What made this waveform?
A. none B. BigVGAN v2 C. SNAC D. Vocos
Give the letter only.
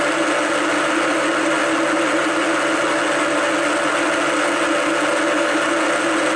A